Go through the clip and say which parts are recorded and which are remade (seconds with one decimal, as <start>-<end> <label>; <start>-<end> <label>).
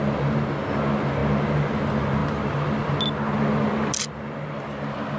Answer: 0.0-5.2 recorded